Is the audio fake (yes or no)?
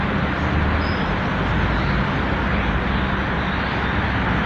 no